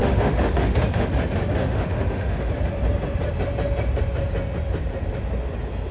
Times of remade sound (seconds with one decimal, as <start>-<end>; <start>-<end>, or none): 0.0-1.1; 1.6-2.5